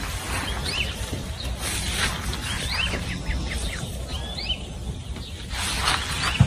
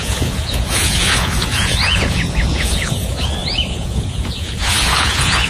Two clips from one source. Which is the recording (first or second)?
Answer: first